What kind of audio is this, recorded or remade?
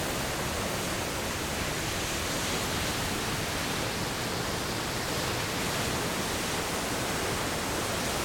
recorded